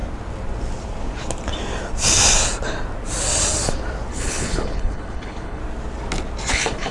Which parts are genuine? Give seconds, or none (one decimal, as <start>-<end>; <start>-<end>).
0.0-4.1; 5.6-6.5

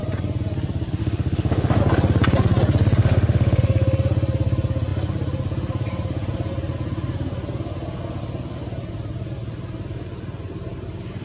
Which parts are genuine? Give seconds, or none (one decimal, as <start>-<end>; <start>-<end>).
0.0-1.0; 1.8-3.0; 3.6-11.2

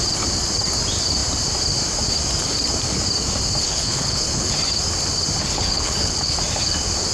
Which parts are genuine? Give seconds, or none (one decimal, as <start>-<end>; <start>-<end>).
0.0-3.6; 4.5-5.4; 6.4-7.1

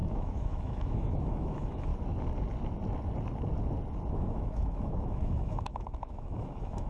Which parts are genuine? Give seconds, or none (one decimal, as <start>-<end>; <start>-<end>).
1.9-4.1

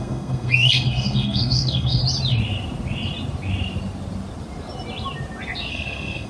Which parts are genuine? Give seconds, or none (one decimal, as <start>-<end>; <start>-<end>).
2.0-5.7

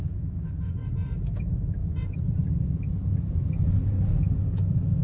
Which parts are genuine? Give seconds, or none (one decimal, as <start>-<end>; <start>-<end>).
0.8-1.4; 1.8-4.3